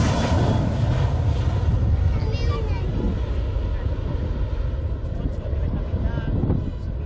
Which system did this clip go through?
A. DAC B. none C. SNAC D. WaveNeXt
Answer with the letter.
B